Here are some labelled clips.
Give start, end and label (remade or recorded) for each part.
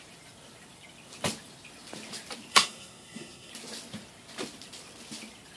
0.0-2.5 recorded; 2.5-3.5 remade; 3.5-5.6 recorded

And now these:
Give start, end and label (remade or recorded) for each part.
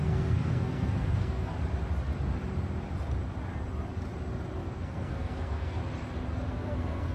0.0-1.5 remade; 1.5-4.6 recorded; 4.6-5.8 remade; 5.8-6.5 recorded; 6.5-7.1 remade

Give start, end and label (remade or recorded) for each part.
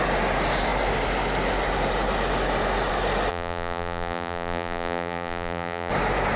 0.0-3.3 recorded; 3.3-5.9 remade; 5.9-6.4 recorded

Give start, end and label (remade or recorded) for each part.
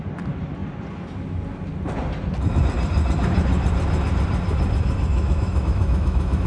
0.0-5.1 recorded; 5.1-6.5 remade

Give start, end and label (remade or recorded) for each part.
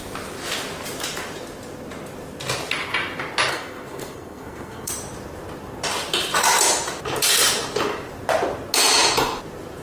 0.0-3.5 recorded; 3.5-4.9 remade; 4.9-9.8 recorded